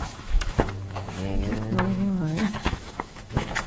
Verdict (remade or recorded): remade